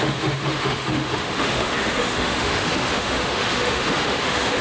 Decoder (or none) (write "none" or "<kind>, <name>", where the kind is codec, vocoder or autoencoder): autoencoder, DAC-VAE